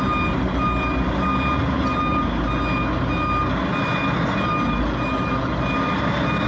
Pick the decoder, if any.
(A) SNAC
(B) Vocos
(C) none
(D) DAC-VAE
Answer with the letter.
C